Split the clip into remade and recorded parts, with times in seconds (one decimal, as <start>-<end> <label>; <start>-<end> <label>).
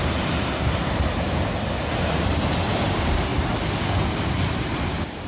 0.0-0.8 remade; 0.8-2.9 recorded; 2.9-3.3 remade; 3.3-4.1 recorded; 4.1-5.3 remade